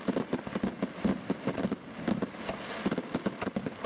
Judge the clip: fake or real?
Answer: real